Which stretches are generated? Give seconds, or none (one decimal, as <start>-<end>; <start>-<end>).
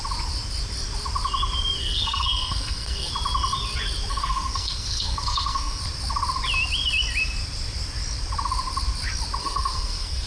1.8-3.1; 4.1-5.8; 9.4-10.3